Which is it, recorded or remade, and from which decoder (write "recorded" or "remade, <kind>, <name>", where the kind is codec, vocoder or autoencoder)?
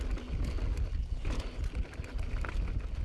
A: recorded